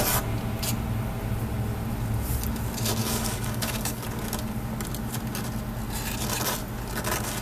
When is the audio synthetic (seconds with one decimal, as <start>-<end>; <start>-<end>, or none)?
3.0-4.0